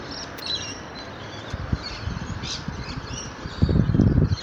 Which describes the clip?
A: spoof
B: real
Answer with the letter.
A